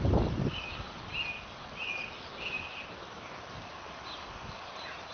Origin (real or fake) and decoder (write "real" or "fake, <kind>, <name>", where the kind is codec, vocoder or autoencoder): real